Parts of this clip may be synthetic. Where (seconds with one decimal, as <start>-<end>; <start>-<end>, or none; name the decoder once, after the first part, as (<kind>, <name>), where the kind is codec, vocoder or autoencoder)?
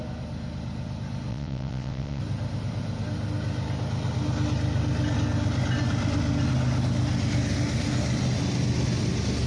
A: 1.3-2.2 (vocoder, WaveNeXt)